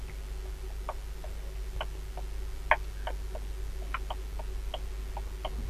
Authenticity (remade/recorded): recorded